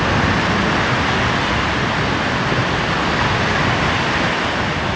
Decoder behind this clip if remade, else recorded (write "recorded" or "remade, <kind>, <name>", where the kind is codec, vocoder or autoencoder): recorded